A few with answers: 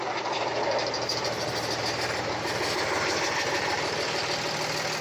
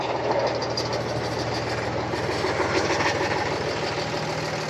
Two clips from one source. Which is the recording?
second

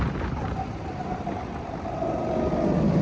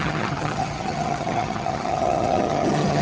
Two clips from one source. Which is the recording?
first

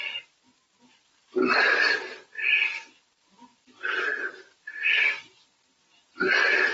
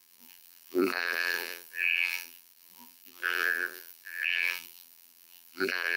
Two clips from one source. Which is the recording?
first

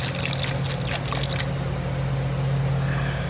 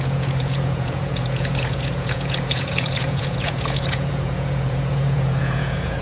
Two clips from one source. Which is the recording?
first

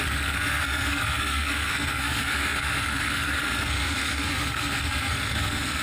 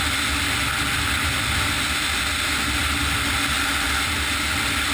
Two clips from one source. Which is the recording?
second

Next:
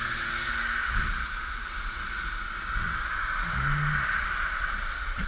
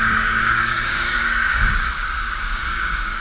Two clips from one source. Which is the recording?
first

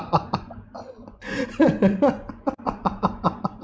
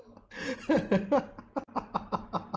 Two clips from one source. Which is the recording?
second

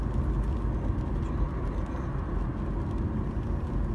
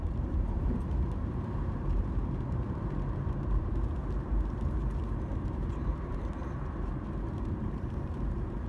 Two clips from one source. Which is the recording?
first